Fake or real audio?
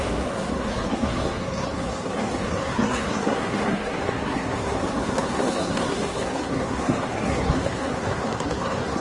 fake